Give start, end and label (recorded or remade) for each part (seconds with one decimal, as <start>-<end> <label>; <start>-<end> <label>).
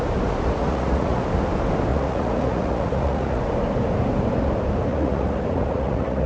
0.0-0.6 recorded; 0.6-1.2 remade; 1.2-1.9 recorded; 1.9-3.4 remade; 3.4-4.9 recorded; 4.9-6.3 remade